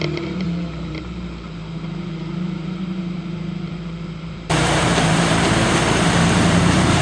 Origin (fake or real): fake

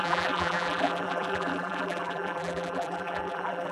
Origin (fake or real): fake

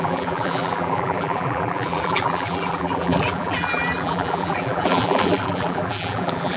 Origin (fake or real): fake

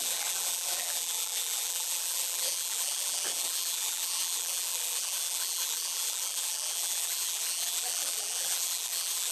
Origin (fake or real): fake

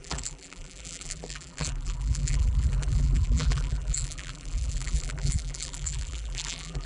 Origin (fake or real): fake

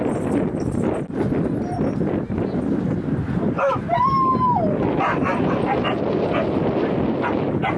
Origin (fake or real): real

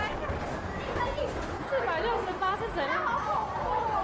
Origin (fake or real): real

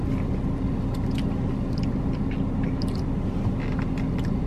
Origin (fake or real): real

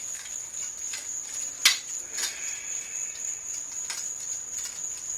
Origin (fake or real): real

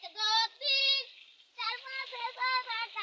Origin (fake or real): real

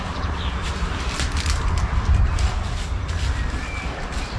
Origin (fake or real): fake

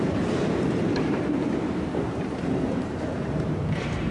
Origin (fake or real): fake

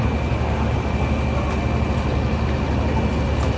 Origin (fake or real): real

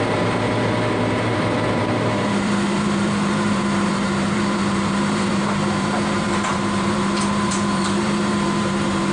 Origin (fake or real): fake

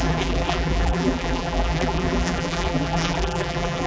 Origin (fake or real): fake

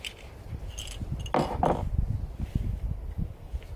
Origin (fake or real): real